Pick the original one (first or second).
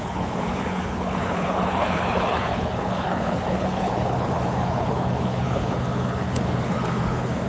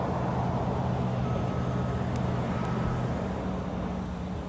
second